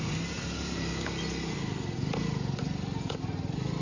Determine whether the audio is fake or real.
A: real